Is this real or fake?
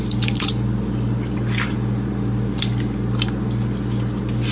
real